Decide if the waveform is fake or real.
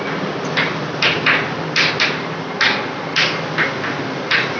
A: real